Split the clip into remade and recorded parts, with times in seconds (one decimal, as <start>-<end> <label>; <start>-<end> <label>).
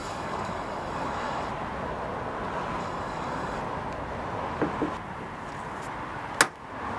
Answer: 0.0-1.5 remade; 1.5-2.8 recorded; 2.8-3.6 remade; 3.6-7.0 recorded